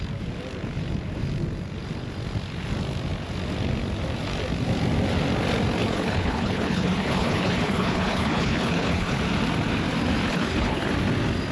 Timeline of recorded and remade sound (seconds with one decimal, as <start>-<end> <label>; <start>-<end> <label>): 0.0-5.8 recorded; 5.8-9.2 remade; 9.2-10.3 recorded; 10.3-10.9 remade; 10.9-11.5 recorded